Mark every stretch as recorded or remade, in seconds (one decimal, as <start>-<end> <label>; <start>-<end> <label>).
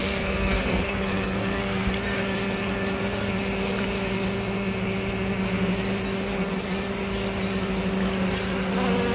0.0-1.9 remade; 1.9-9.1 recorded